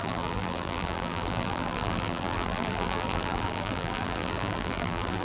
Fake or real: fake